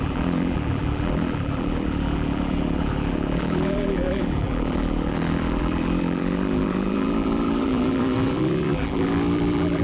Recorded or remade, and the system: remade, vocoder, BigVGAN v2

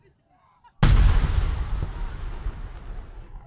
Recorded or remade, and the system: recorded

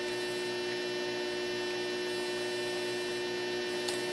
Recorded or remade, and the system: recorded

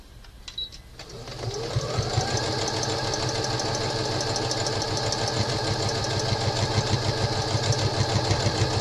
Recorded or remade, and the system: recorded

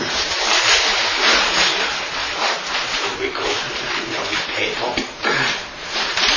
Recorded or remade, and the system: remade, vocoder, BigVGAN v2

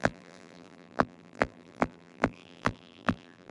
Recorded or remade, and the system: remade, vocoder, BigVGAN v2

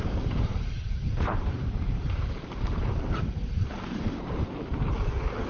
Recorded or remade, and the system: remade, vocoder, BigVGAN v2